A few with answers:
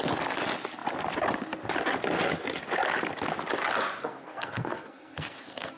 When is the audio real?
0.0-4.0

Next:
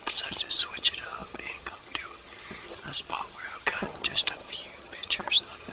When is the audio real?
none

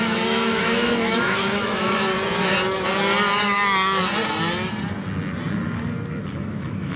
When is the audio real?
2.1-6.3

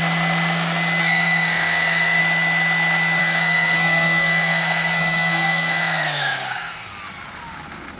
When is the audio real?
0.0-1.0; 2.2-3.2; 6.9-8.0

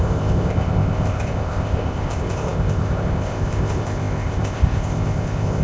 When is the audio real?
none

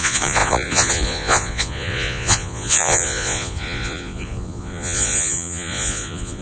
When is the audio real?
none

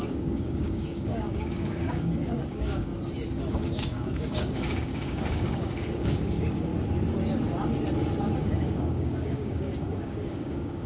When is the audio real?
2.9-3.5; 6.7-8.4

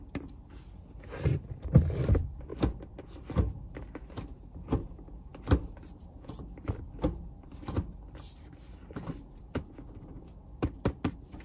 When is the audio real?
0.0-2.5; 3.7-11.4